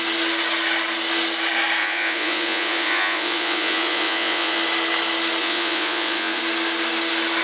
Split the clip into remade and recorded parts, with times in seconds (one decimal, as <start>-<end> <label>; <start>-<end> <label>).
0.0-1.8 recorded; 1.8-4.6 remade; 4.6-5.4 recorded; 5.4-6.4 remade; 6.4-7.4 recorded